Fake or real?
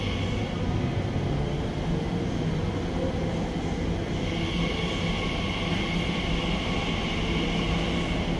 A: real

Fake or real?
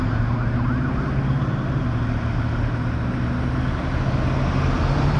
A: real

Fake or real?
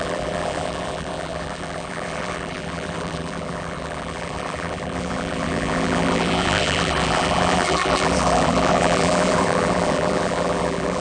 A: fake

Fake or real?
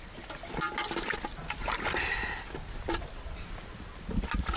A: real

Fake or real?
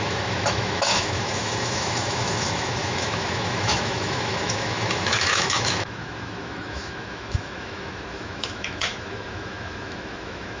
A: fake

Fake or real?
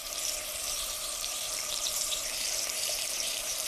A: fake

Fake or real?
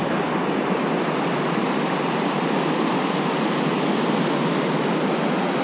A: real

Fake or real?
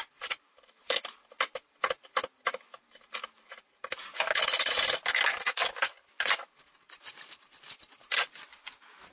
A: real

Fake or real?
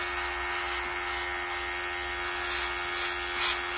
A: real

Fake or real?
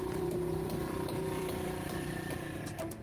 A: fake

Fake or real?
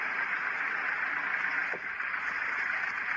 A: real